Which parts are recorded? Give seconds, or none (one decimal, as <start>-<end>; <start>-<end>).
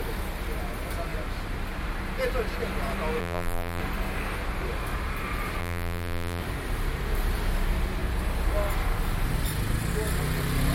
0.0-3.2; 3.8-5.6; 6.4-10.7